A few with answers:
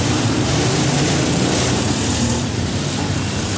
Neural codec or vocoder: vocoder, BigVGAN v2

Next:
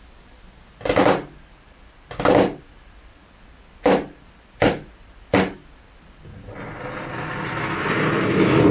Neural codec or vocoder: none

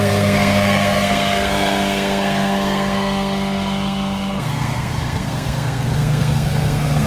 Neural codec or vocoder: codec, SNAC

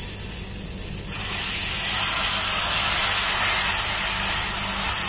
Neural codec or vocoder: none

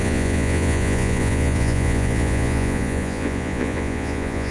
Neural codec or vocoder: vocoder, Vocos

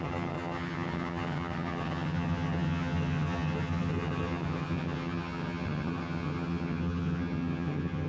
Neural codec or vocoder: vocoder, HiFi-GAN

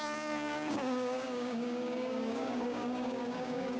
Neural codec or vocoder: codec, DAC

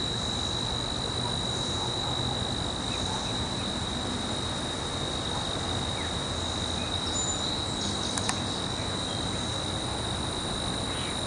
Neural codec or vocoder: none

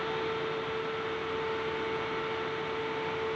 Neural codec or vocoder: none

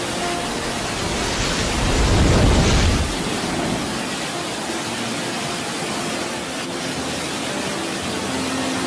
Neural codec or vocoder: none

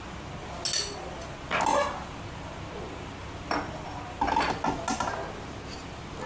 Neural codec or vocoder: none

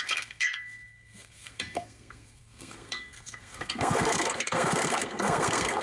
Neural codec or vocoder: codec, SNAC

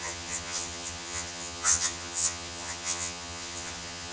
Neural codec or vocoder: vocoder, HiFi-GAN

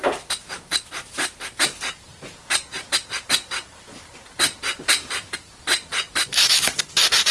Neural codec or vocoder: vocoder, BigVGAN v2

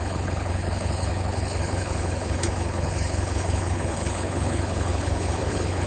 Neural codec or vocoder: codec, HILCodec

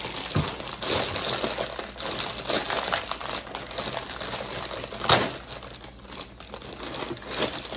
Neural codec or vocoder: none